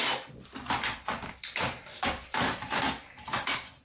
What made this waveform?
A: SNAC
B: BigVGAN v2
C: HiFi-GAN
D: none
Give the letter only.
D